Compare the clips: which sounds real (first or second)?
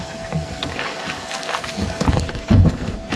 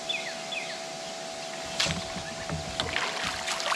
second